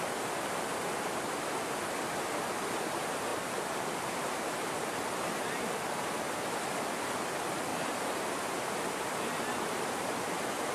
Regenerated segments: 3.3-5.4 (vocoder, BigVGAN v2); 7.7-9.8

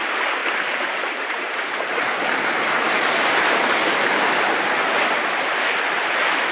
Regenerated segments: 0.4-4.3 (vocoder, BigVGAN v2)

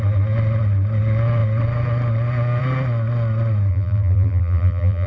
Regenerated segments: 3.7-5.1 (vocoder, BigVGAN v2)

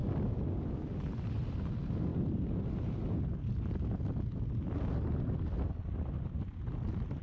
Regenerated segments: none

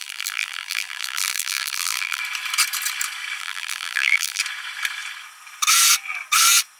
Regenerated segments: 0.0-2.2 (vocoder, BigVGAN v2); 3.4-4.4

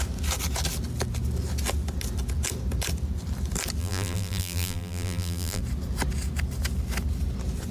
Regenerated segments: 3.8-5.6 (vocoder, BigVGAN v2)